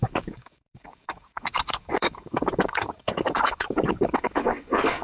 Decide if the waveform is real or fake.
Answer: fake